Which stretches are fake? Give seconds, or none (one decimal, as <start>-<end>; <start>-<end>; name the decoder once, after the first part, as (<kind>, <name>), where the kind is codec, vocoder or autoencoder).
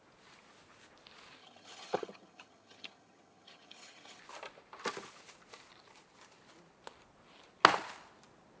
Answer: 1.4-4.2 (vocoder, HiFi-GAN)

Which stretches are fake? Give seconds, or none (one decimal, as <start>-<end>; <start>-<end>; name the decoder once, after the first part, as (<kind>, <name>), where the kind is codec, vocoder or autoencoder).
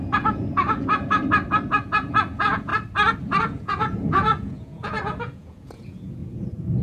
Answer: 0.0-1.2 (vocoder, Vocos); 1.7-2.7; 3.4-6.8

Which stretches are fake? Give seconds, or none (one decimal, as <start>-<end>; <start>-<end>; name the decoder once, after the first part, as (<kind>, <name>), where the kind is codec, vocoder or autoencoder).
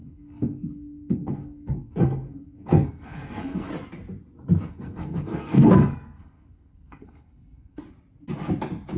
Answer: 0.0-3.7 (codec, SNAC); 4.7-7.8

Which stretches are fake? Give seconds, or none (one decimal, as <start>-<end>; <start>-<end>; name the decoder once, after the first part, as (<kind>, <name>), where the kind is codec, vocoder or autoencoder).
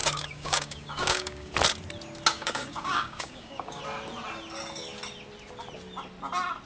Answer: 0.0-1.5 (codec, DAC); 2.3-3.8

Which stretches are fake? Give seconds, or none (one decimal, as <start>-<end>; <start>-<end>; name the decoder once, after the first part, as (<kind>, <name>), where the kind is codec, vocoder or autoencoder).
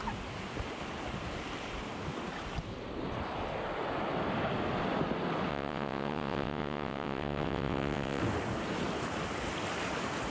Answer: 5.5-8.2 (vocoder, WaveNeXt)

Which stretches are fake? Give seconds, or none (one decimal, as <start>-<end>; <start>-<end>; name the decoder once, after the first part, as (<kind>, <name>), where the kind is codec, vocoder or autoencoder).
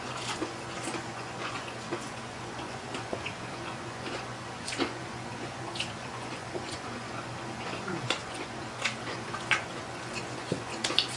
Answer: 0.0-11.2 (vocoder, Vocos)